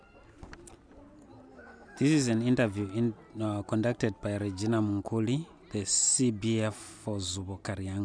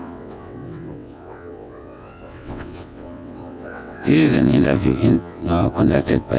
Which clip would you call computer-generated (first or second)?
second